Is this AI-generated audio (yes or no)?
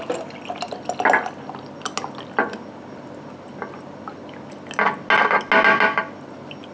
no